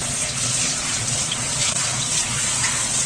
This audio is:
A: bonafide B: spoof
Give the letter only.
B